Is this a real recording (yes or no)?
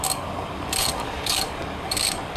no